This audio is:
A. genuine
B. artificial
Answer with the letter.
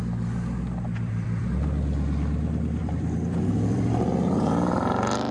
B